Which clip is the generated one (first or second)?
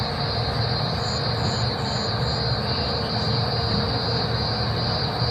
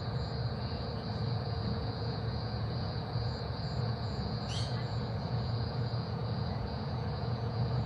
second